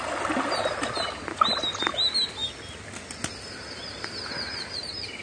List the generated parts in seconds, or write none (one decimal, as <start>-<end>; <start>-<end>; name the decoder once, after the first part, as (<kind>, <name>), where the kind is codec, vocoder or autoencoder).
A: none